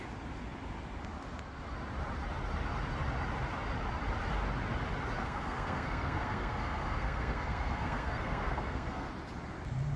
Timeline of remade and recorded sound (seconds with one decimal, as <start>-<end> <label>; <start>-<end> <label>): 0.0-5.2 recorded; 5.2-9.1 remade; 9.1-10.0 recorded

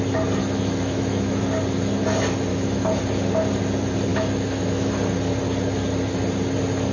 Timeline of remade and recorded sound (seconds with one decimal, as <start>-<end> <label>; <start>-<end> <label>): 0.0-0.4 recorded; 0.4-1.4 remade; 1.4-2.5 recorded; 2.5-3.0 remade; 3.0-4.1 recorded; 4.1-4.9 remade; 4.9-6.9 recorded

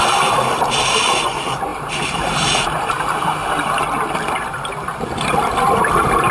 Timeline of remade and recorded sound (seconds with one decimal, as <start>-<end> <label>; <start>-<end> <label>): 0.0-3.4 remade; 3.4-5.8 recorded; 5.8-6.3 remade

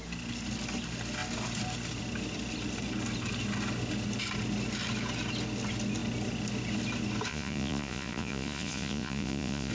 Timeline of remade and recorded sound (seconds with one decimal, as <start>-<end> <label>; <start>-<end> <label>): 0.0-7.3 recorded; 7.3-9.7 remade

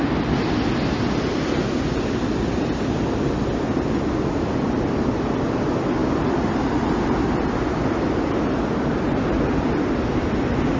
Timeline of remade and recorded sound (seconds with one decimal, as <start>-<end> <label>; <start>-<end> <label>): 0.0-10.8 recorded

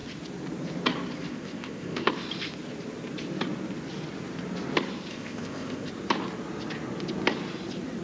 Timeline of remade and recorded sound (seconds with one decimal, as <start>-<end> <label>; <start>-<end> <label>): 0.0-1.3 recorded; 1.3-2.1 remade; 2.1-5.1 recorded; 5.1-5.9 remade; 5.9-8.0 recorded

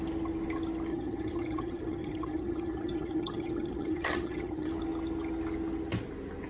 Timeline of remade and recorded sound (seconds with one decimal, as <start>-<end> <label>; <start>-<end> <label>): 0.0-0.9 recorded; 0.9-4.7 remade; 4.7-6.5 recorded

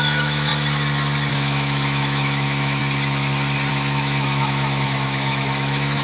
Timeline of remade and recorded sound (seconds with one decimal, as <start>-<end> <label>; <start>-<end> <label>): 0.0-0.5 remade; 0.5-1.3 recorded; 1.3-2.8 remade; 2.8-3.7 recorded; 3.7-6.0 remade